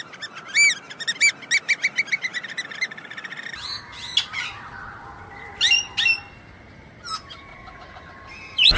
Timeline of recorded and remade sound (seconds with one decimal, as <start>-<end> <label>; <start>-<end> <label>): 0.0-7.5 recorded; 7.5-8.1 remade; 8.1-8.8 recorded